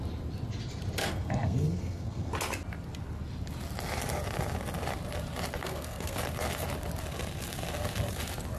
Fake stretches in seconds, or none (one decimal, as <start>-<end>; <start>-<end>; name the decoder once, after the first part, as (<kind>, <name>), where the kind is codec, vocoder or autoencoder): 1.0-2.3 (codec, SNAC); 5.6-6.2